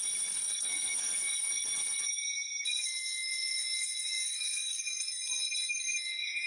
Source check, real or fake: fake